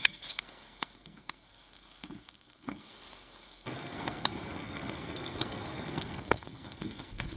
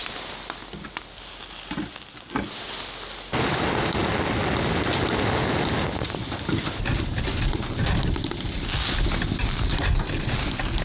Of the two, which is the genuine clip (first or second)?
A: second